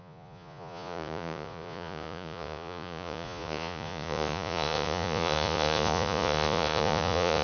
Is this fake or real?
fake